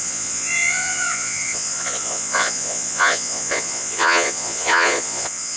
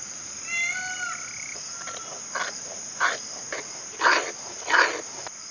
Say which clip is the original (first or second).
second